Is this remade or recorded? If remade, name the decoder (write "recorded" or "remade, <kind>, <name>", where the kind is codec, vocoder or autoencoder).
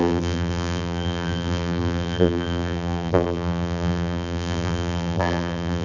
remade, vocoder, BigVGAN v2